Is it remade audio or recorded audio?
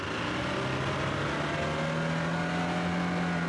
recorded